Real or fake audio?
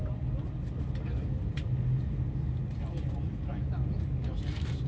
real